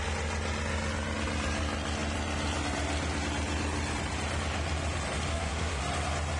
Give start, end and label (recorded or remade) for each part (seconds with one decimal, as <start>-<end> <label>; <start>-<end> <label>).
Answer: 0.0-5.3 recorded; 5.3-5.8 remade; 5.8-6.4 recorded